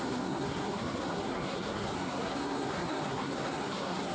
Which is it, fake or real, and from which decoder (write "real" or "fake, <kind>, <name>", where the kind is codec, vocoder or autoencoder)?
fake, codec, SNAC